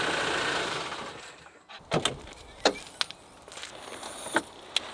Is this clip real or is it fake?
real